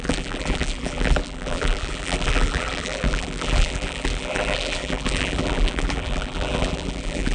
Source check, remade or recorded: remade